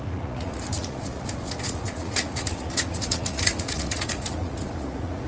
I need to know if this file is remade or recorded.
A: remade